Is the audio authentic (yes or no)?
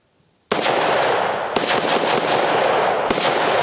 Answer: yes